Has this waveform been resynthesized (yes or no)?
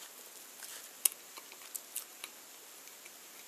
no